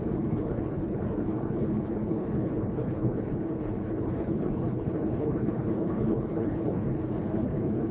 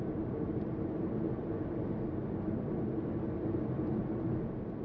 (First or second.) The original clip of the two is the second